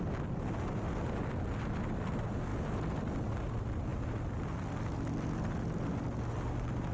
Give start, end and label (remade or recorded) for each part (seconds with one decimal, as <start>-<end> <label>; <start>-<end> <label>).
0.0-6.9 recorded